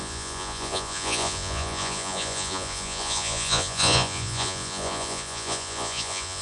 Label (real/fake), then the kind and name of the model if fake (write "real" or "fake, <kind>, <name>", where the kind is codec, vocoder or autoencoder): fake, vocoder, Vocos